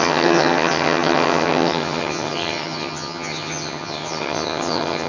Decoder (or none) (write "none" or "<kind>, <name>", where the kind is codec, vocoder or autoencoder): vocoder, HiFi-GAN